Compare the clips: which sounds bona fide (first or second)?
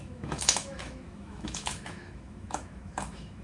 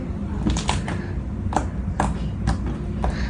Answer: second